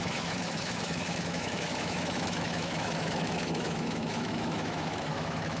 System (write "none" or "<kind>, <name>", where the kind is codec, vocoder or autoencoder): autoencoder, DAC-VAE